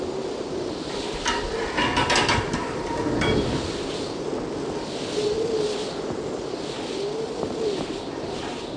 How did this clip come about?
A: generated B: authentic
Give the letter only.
B